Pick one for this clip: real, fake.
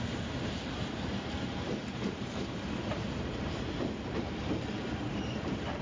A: fake